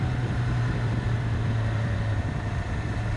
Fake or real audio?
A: fake